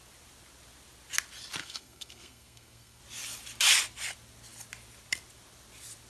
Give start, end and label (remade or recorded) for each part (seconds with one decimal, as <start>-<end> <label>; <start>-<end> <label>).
0.0-1.6 recorded; 1.6-3.0 remade; 3.0-6.1 recorded